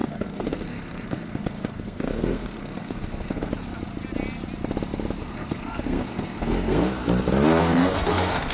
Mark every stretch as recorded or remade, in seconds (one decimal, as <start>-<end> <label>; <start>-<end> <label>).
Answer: 0.0-3.5 remade; 3.5-5.2 recorded; 5.2-7.0 remade; 7.0-7.6 recorded; 7.6-8.5 remade